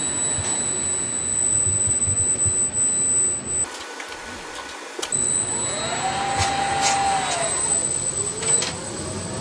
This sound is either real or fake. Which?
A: real